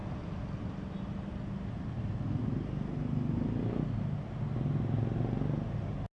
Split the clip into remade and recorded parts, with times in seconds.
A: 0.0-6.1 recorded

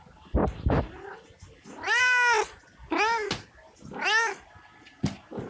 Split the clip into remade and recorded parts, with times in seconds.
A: 0.0-5.5 recorded

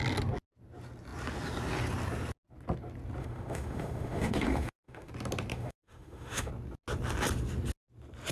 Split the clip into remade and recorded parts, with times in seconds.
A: 0.0-3.2 recorded; 3.2-5.1 remade; 5.1-5.5 recorded; 5.5-6.5 remade; 6.5-8.3 recorded

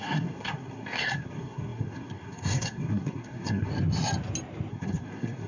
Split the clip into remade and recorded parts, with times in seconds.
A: 0.0-3.7 remade; 3.7-4.7 recorded; 4.7-5.5 remade